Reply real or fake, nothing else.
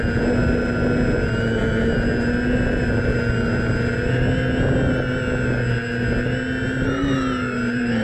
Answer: real